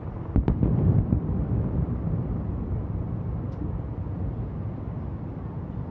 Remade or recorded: remade